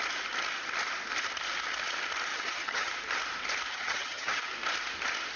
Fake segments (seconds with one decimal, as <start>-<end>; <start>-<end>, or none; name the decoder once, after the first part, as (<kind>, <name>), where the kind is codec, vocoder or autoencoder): 2.3-2.9 (vocoder, HiFi-GAN); 3.7-4.5

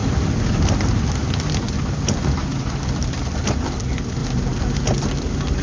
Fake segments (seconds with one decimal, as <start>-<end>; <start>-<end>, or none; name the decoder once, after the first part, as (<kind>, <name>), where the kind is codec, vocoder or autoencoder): 4.2-4.8 (vocoder, BigVGAN v2)